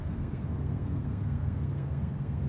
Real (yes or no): no